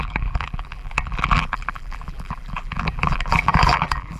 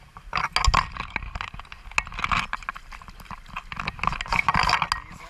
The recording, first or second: second